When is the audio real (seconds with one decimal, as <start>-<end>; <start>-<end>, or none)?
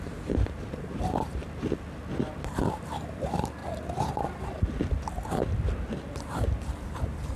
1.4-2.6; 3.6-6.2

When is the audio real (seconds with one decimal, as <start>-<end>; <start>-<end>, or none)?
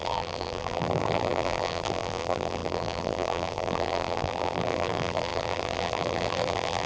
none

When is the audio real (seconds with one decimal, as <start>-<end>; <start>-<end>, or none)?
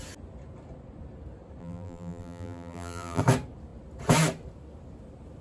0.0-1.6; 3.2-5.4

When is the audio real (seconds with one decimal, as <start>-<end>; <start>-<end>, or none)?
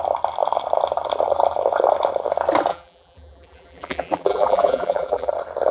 0.0-2.7; 5.3-5.7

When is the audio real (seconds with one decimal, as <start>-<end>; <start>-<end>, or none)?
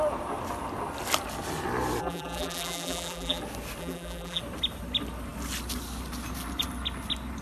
0.0-2.0; 3.4-3.8; 4.4-7.4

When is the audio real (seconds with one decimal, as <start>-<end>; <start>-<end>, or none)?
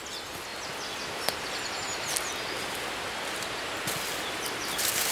0.0-5.1